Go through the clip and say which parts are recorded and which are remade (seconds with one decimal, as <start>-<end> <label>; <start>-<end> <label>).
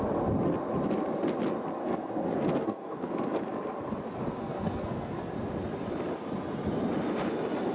0.0-1.8 recorded; 1.8-3.1 remade; 3.1-4.4 recorded; 4.4-5.2 remade; 5.2-7.7 recorded